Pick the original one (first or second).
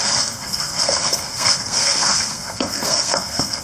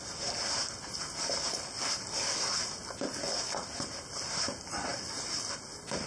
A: second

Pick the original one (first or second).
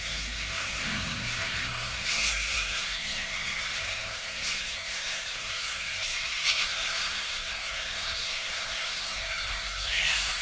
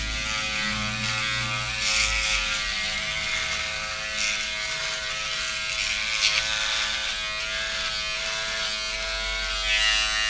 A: second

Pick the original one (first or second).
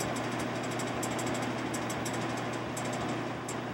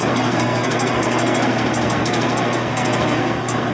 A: first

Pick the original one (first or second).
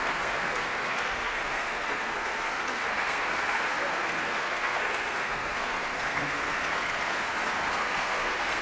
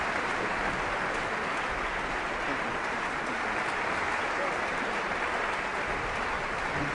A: second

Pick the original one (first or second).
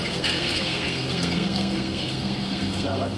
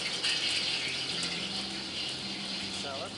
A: second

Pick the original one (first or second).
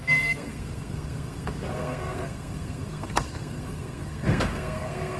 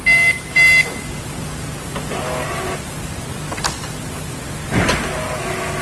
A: second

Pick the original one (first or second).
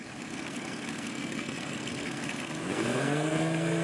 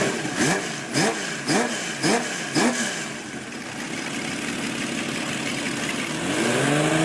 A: second